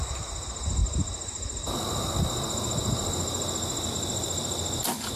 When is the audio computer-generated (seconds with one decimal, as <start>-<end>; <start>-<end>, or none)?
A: none